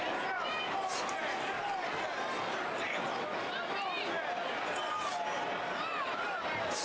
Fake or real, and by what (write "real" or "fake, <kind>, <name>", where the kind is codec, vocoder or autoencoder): real